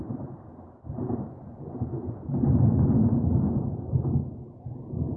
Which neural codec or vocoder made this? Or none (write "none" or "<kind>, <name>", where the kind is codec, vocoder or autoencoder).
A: none